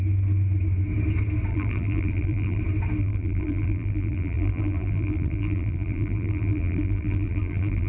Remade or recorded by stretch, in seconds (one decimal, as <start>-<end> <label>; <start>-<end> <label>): 0.0-1.5 recorded; 1.5-2.6 remade; 2.6-3.0 recorded; 3.0-7.9 remade